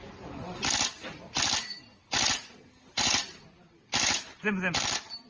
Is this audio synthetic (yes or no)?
no